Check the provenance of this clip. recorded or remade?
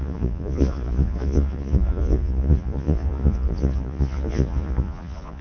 remade